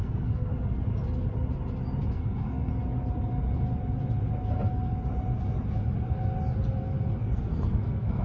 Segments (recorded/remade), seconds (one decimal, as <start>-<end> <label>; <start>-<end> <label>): 0.0-0.5 remade; 0.5-2.1 recorded; 2.1-2.7 remade; 2.7-7.2 recorded; 7.2-8.2 remade